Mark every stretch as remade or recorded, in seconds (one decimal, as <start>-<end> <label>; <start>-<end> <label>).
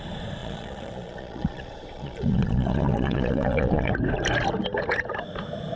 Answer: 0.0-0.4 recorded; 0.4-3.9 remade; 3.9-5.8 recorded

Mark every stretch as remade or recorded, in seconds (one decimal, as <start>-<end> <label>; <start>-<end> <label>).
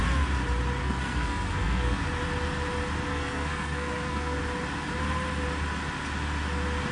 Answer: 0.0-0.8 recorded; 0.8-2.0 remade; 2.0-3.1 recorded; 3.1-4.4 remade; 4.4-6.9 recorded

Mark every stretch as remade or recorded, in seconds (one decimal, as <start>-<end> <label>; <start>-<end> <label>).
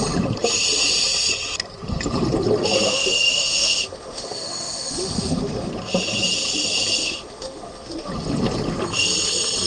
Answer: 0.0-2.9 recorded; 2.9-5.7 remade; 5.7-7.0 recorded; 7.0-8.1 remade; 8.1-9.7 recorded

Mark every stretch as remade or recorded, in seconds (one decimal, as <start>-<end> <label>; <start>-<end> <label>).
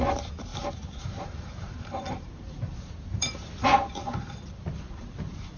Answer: 0.0-0.5 recorded; 0.5-3.5 remade; 3.5-5.6 recorded